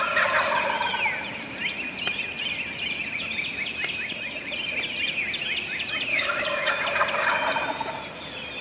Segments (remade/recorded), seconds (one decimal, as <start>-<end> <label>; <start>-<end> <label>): 0.0-6.1 recorded; 6.1-6.7 remade; 6.7-8.6 recorded